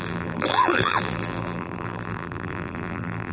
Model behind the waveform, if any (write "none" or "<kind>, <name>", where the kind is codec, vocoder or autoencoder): vocoder, BigVGAN v2